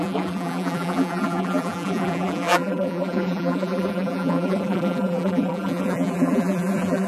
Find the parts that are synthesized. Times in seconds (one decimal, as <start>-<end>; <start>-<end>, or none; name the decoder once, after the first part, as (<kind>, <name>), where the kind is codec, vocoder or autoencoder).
0.0-7.1 (vocoder, BigVGAN v2)